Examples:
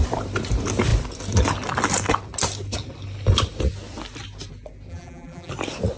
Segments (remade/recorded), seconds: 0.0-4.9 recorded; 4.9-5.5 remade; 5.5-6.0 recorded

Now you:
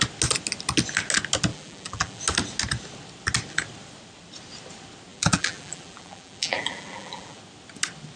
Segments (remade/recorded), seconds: 0.0-1.5 recorded; 1.5-2.2 remade; 2.2-5.1 recorded; 5.1-7.4 remade; 7.4-8.2 recorded

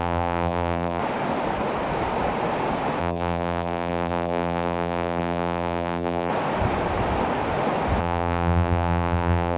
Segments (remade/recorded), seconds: 0.0-1.0 remade; 1.0-3.0 recorded; 3.0-6.3 remade; 6.3-8.0 recorded; 8.0-9.6 remade

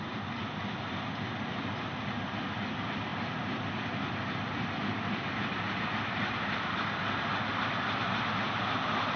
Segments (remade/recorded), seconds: 0.0-4.8 recorded; 4.8-7.0 remade; 7.0-7.5 recorded; 7.5-8.1 remade; 8.1-9.2 recorded

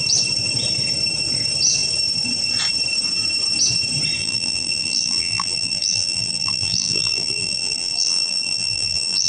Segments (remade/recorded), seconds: 0.0-4.2 recorded; 4.2-9.3 remade